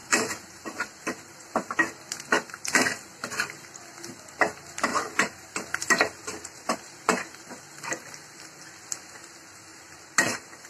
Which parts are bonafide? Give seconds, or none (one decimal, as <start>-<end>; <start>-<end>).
1.7-4.9; 7.6-9.7